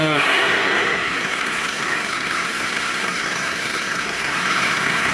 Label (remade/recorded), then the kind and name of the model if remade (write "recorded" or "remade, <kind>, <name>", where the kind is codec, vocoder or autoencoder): remade, codec, SNAC